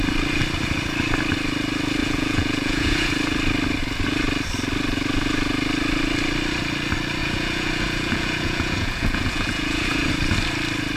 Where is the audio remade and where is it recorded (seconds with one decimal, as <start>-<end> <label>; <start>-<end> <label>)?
0.0-2.0 recorded; 2.0-3.1 remade; 3.1-7.2 recorded; 7.2-10.1 remade; 10.1-11.0 recorded